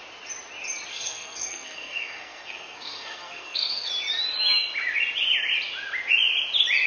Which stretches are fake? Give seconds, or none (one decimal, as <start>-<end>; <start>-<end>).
0.9-3.9